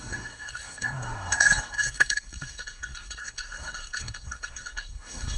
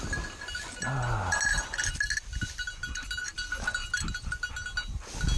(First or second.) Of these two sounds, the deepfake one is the first